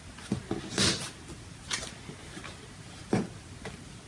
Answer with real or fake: real